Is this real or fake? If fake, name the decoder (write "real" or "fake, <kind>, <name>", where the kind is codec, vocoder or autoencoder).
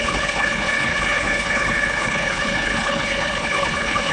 fake, codec, HILCodec